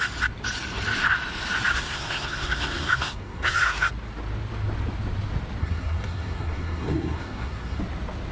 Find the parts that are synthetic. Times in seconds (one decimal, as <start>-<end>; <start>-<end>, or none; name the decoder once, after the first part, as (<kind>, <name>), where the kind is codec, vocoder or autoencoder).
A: 1.7-3.9 (codec, SNAC); 5.6-7.8